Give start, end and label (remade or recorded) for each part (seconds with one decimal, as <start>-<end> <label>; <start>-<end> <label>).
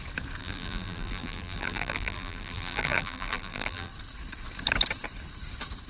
0.0-0.4 recorded; 0.4-3.9 remade; 3.9-5.9 recorded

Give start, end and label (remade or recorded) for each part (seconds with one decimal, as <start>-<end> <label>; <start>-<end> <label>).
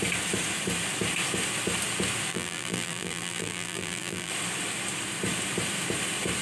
0.0-2.3 recorded; 2.3-4.3 remade; 4.3-6.4 recorded